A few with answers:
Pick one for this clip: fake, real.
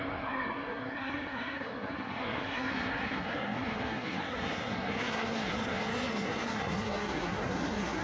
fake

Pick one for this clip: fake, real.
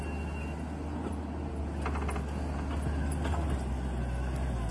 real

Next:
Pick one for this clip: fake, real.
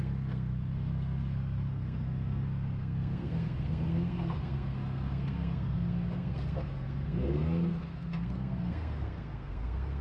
fake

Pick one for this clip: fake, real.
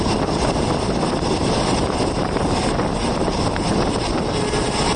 real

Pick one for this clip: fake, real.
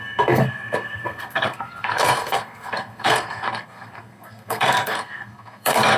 fake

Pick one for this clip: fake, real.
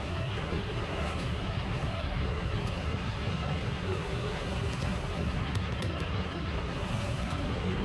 fake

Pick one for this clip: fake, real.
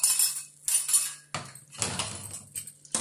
real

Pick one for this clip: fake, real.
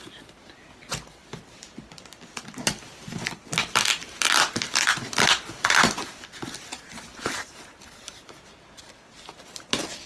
real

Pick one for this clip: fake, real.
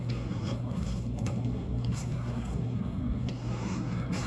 fake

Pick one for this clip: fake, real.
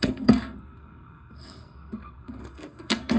fake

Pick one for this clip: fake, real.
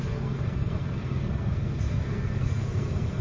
fake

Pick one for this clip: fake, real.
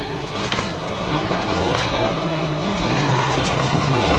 fake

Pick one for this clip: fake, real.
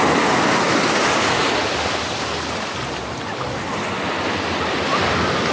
real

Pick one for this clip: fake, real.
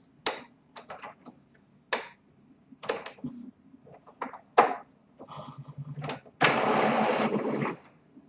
real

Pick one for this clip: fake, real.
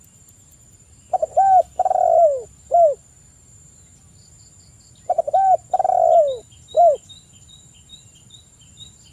real